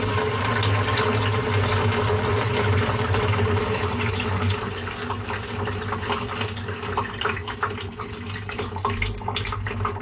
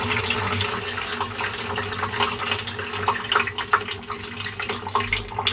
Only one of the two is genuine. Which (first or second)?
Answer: second